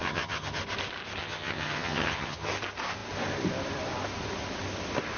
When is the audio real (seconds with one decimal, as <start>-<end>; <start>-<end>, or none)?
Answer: 0.6-1.2; 2.5-5.2